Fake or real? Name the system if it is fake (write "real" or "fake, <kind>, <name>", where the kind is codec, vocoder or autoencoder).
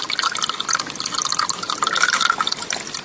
real